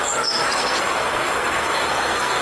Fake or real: fake